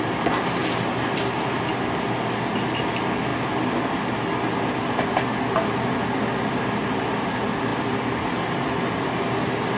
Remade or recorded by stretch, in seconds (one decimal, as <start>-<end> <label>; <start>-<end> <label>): 0.0-9.8 recorded